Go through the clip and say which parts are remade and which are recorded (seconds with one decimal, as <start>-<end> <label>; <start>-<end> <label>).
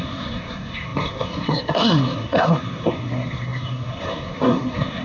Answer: 0.0-5.0 remade